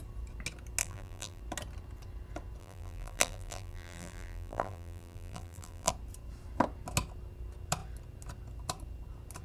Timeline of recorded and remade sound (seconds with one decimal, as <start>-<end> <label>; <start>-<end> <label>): 0.0-0.8 recorded; 0.8-1.4 remade; 1.4-2.6 recorded; 2.6-5.9 remade; 5.9-9.4 recorded